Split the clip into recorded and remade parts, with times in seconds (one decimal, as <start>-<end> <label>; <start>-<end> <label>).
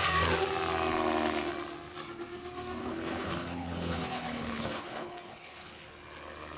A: 0.0-2.8 recorded; 2.8-5.9 remade; 5.9-6.6 recorded